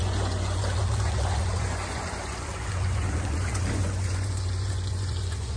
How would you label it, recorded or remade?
remade